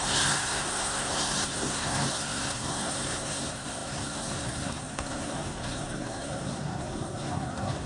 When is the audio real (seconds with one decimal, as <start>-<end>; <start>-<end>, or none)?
none